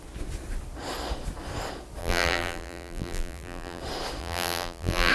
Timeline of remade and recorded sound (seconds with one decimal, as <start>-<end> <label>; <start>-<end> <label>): 0.0-2.0 recorded; 2.0-3.8 remade; 3.8-4.2 recorded; 4.2-5.1 remade